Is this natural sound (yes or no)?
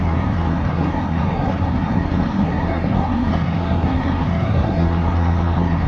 no